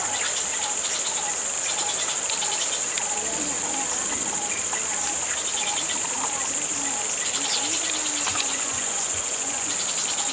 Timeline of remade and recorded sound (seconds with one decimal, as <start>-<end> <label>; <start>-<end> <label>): 0.0-8.3 recorded; 8.3-9.8 remade; 9.8-10.3 recorded